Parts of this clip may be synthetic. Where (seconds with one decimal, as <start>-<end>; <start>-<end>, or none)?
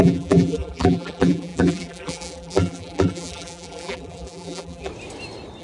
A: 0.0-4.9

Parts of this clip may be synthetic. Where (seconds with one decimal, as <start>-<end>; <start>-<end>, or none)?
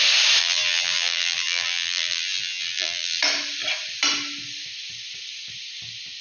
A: 0.4-3.2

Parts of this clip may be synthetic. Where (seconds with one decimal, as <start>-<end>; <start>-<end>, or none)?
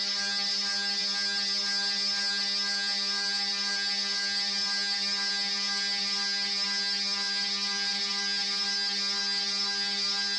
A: none